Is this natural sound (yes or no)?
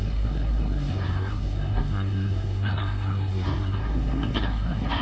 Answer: no